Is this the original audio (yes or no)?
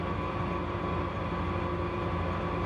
yes